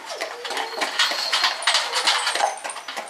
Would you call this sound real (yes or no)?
yes